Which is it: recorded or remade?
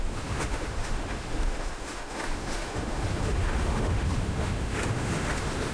remade